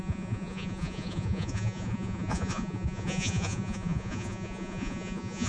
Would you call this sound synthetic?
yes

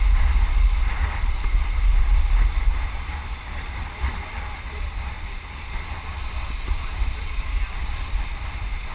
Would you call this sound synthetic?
no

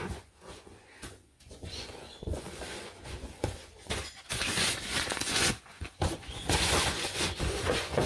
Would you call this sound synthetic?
yes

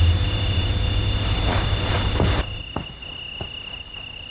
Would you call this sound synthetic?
no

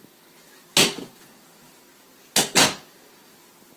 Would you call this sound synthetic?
no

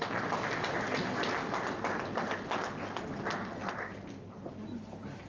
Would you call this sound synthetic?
no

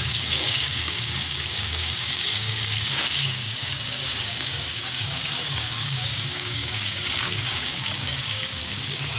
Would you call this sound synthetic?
yes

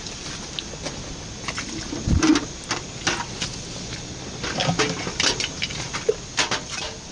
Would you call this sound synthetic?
no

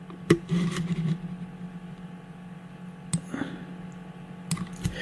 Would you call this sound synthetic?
no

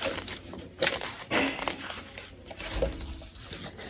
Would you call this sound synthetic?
no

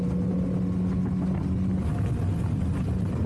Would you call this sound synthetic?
no